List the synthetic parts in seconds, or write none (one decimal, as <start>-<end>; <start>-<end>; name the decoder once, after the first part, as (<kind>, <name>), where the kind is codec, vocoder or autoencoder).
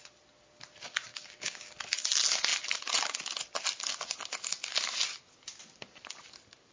1.1-1.7 (codec, DAC)